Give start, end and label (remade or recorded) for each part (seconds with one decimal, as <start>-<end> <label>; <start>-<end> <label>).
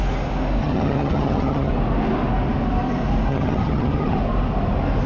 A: 0.0-0.6 recorded; 0.6-1.7 remade; 1.7-3.3 recorded; 3.3-4.2 remade; 4.2-5.1 recorded